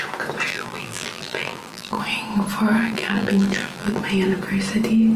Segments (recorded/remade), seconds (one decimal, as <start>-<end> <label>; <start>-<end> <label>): 0.0-0.5 recorded; 0.5-2.0 remade; 2.0-2.8 recorded; 2.8-4.0 remade; 4.0-5.2 recorded